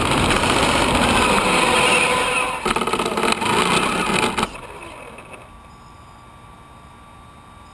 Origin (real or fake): real